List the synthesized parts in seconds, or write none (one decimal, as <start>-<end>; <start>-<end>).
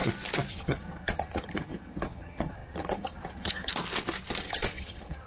0.5-3.7; 4.4-5.3